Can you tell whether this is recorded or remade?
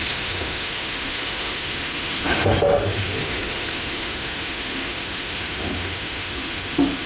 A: remade